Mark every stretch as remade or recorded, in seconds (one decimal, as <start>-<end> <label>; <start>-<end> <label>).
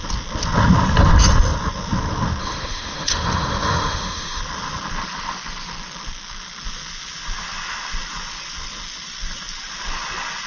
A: 0.0-2.4 recorded; 2.4-4.4 remade; 4.4-10.5 recorded